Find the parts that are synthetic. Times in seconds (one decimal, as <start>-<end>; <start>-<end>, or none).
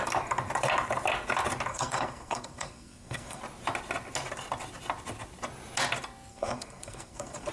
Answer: 1.7-3.4; 6.3-7.5